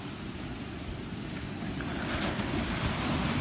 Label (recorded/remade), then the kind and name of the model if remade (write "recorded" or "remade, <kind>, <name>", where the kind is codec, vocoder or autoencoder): recorded